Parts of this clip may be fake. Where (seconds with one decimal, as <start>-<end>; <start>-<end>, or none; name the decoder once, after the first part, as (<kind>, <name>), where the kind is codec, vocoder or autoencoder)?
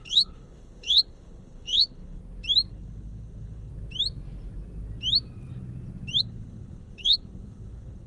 0.0-2.2 (codec, HILCodec); 2.7-3.7; 6.2-8.1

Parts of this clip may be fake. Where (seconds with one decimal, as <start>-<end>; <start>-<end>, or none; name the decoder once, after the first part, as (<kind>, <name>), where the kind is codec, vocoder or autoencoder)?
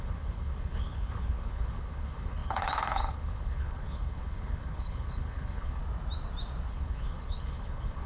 0.0-5.8 (codec, HILCodec); 6.7-8.1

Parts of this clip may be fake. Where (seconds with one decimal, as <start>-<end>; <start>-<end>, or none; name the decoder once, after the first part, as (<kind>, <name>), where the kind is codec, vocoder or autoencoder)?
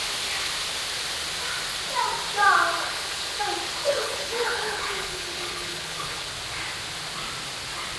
2.8-3.4 (codec, HILCodec); 3.8-6.3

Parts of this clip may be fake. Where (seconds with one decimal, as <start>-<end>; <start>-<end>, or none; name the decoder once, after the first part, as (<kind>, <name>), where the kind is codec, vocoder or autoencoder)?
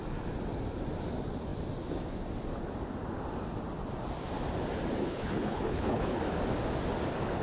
5.0-6.2 (codec, HILCodec)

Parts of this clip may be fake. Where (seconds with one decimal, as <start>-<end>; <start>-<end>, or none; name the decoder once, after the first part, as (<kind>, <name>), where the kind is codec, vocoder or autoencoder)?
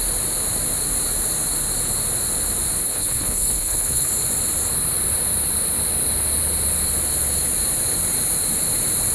2.8-4.1 (codec, HILCodec)